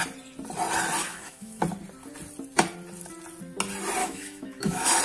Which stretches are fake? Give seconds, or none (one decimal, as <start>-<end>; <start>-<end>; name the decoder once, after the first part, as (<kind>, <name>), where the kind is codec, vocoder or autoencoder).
1.0-1.6 (autoencoder, DAC-VAE); 4.0-5.0